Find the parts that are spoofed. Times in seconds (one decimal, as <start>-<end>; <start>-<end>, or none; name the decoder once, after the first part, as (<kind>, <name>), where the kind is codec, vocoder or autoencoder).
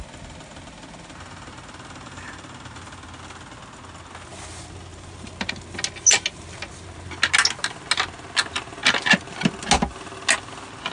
4.9-5.5 (vocoder, BigVGAN v2)